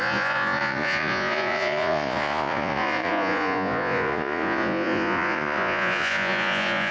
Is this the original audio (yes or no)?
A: no